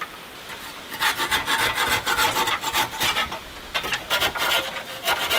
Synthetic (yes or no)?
no